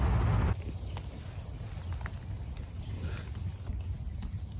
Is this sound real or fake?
real